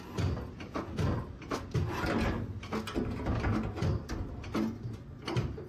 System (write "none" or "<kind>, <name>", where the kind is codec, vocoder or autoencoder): none